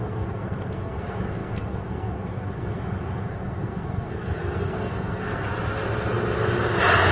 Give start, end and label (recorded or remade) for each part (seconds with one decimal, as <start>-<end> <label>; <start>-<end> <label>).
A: 0.0-5.5 remade; 5.5-7.1 recorded